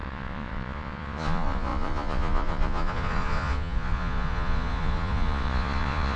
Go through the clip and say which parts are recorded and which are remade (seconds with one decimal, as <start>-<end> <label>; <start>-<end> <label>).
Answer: 0.0-6.2 remade